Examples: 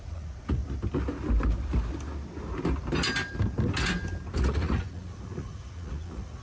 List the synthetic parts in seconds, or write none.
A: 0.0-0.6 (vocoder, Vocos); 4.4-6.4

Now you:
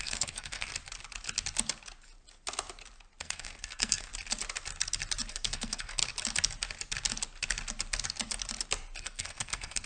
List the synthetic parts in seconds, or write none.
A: 0.0-0.7 (codec, SNAC); 3.2-4.1; 5.3-6.0; 9.0-9.9

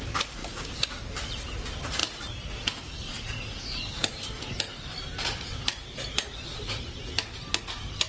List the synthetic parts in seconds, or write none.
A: 0.4-1.1 (codec, DAC)

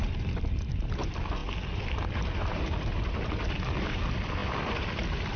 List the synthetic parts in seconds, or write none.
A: 0.0-5.4 (vocoder, BigVGAN v2)

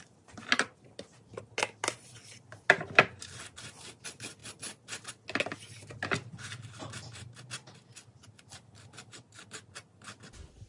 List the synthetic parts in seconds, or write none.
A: none

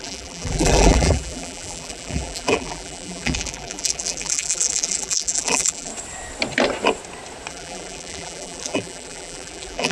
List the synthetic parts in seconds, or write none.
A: 0.0-5.9 (vocoder, BigVGAN v2); 7.5-9.9

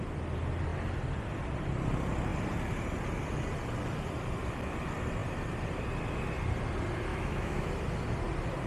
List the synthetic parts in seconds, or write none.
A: 7.1-7.7 (autoencoder, DAC-VAE)

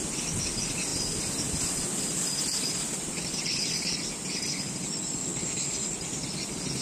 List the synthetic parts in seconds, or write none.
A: none